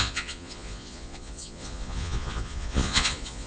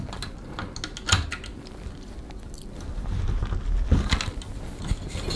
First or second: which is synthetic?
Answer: first